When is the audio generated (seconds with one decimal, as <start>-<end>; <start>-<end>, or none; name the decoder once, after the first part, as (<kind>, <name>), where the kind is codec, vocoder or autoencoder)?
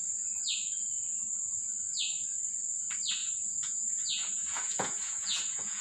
3.2-5.8 (vocoder, Vocos)